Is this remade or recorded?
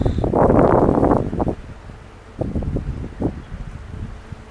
recorded